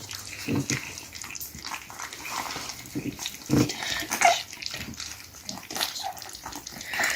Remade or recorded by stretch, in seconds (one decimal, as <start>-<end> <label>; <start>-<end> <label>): 0.0-7.2 recorded